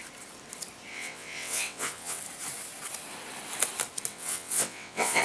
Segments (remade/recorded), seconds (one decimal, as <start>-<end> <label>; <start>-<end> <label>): 0.0-0.9 recorded; 0.9-2.2 remade; 2.2-4.1 recorded; 4.1-5.2 remade